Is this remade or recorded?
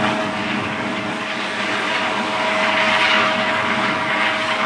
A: remade